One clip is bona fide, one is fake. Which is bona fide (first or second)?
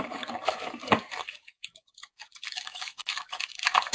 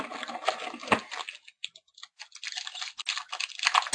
second